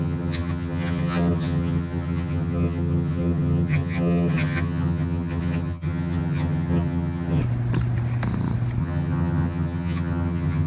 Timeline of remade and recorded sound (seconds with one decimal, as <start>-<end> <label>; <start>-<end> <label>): 0.0-7.4 remade; 7.4-8.8 recorded; 8.8-10.7 remade